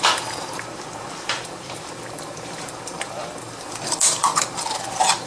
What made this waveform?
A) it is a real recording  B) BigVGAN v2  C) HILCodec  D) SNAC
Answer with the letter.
B